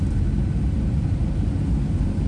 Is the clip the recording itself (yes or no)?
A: no